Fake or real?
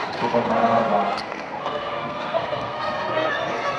fake